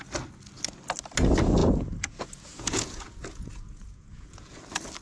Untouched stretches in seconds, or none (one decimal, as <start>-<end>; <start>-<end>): 0.0-1.6; 4.5-5.0